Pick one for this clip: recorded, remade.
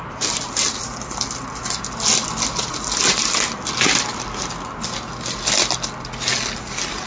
recorded